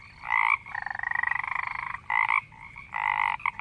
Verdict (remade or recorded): recorded